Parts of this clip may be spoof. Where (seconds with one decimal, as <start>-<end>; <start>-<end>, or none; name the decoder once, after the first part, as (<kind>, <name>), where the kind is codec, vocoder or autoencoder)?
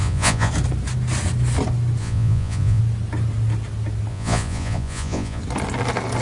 0.0-0.5 (vocoder, Vocos); 2.0-2.8; 4.1-5.4